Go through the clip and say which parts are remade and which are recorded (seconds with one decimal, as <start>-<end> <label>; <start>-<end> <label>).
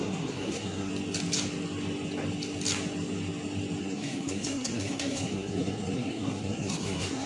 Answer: 0.0-0.9 remade; 0.9-3.8 recorded; 3.8-7.3 remade